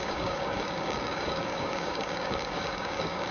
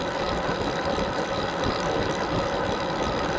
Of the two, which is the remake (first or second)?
first